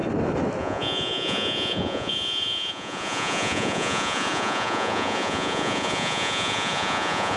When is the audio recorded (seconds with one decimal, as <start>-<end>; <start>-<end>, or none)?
0.0-0.6